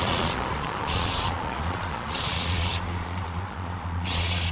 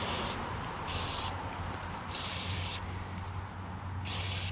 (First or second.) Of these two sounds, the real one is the second